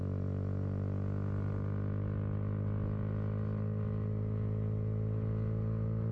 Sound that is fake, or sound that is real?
real